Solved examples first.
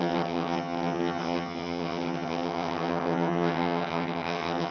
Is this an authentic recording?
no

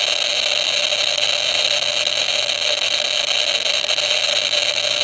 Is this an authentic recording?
yes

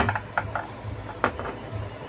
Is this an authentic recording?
yes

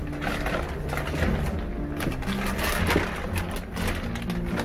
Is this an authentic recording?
yes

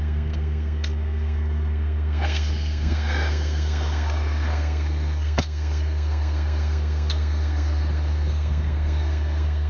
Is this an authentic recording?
no